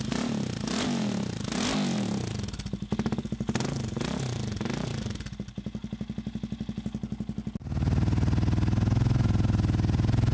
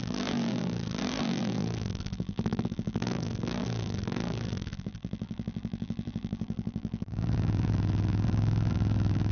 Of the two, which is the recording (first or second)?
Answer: first